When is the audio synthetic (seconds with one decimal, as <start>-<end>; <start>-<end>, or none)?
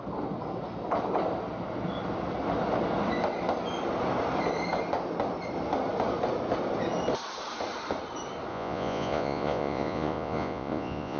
8.5-11.2